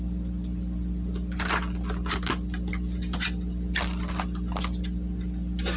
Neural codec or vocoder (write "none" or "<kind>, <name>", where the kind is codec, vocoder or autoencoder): none